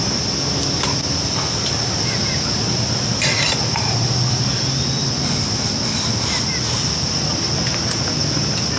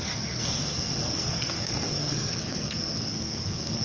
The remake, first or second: second